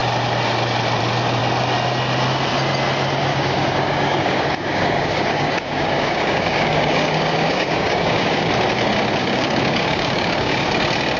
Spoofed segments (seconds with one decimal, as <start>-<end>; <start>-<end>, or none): 3.3-8.5; 9.2-10.7